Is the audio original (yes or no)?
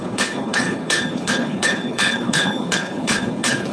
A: no